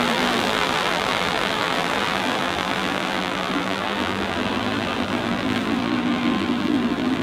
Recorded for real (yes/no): no